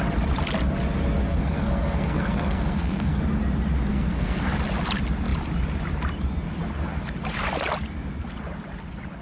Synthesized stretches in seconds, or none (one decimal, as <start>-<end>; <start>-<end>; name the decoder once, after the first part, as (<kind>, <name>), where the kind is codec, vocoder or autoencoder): 1.2-3.2 (codec, SNAC); 3.9-4.5